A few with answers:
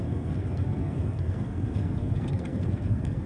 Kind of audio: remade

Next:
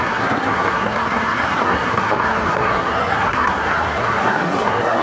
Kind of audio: remade